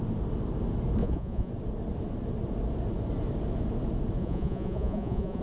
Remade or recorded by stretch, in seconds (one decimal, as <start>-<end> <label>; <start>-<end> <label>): 0.0-1.0 recorded; 1.0-1.5 remade; 1.5-4.2 recorded; 4.2-5.4 remade